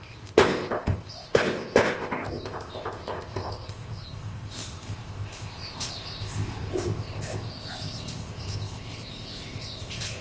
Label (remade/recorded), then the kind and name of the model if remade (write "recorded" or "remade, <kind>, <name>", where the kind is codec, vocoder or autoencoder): remade, codec, ZipCodec